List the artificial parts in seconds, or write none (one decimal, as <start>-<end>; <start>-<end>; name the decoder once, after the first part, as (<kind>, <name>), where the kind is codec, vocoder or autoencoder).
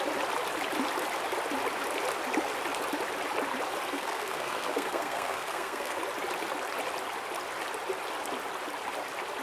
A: 3.9-6.0 (codec, SNAC)